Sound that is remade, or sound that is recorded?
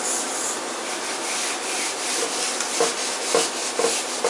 recorded